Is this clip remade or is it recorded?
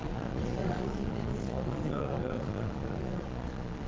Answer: remade